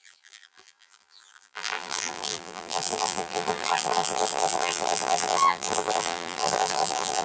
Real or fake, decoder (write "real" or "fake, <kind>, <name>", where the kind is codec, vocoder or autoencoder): fake, vocoder, BigVGAN v2